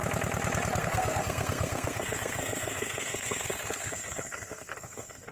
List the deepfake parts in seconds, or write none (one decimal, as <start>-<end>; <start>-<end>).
0.8-5.3